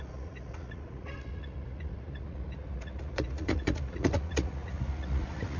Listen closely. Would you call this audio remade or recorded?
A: remade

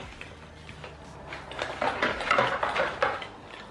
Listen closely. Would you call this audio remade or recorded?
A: recorded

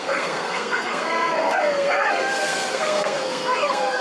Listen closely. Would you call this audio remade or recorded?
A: remade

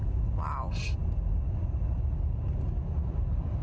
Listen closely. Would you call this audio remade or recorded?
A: recorded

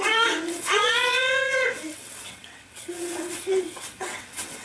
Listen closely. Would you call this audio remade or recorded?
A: remade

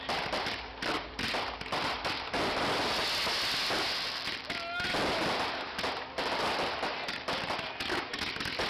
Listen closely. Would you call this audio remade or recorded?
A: recorded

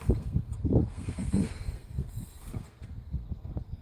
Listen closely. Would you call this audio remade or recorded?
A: remade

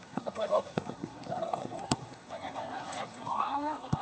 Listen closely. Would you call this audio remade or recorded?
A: remade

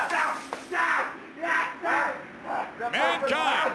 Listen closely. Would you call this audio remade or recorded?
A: recorded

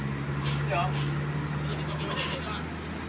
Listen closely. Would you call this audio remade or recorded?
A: recorded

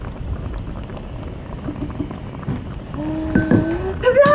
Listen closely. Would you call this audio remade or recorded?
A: recorded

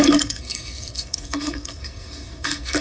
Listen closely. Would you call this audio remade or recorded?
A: remade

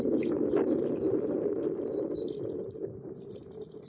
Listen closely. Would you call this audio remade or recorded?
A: recorded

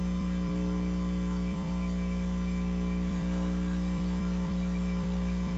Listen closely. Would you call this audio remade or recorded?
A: remade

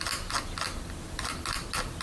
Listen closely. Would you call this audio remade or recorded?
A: recorded